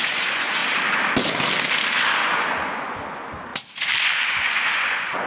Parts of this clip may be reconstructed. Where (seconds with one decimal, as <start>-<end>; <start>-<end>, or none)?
0.0-0.6; 2.1-3.5; 4.0-5.3